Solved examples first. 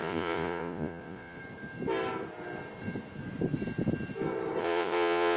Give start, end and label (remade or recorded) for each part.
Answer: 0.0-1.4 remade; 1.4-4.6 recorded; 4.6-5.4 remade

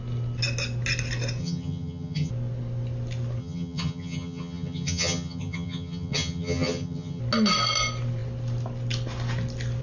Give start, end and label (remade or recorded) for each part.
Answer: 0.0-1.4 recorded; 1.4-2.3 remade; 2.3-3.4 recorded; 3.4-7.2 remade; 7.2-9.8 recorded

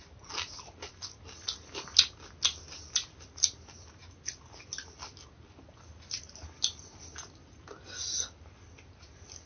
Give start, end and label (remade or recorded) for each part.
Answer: 0.0-9.5 recorded